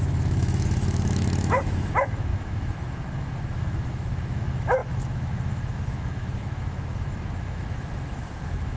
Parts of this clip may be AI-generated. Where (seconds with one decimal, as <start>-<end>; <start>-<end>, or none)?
0.0-8.8